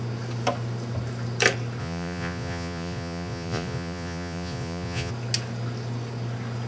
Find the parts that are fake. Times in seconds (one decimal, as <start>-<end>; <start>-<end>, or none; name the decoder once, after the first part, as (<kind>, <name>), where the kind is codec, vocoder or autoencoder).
1.8-5.1 (vocoder, Vocos)